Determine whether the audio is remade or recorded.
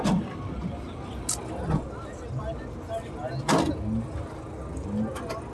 recorded